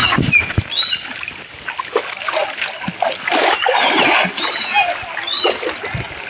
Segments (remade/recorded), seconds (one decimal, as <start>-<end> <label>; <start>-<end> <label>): 0.0-6.3 recorded